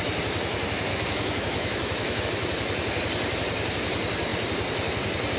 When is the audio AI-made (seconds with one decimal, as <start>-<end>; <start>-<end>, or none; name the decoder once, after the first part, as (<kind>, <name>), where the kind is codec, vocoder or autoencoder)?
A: 0.9-2.2 (autoencoder, DAC-VAE)